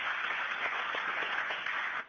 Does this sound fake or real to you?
fake